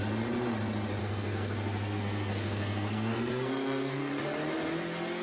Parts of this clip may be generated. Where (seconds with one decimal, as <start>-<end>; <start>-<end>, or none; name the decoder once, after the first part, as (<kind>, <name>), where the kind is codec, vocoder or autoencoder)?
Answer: 1.0-4.1 (codec, SNAC)